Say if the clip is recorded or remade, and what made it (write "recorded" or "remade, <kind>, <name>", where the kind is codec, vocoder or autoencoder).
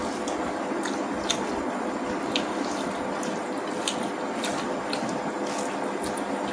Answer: recorded